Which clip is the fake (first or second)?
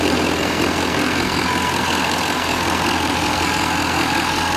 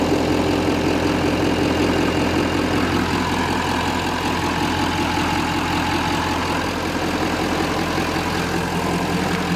first